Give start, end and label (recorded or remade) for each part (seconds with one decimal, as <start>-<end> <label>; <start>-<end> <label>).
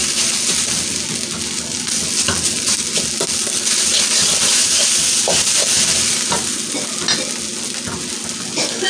0.0-8.9 recorded